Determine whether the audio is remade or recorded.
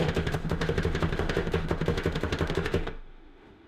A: remade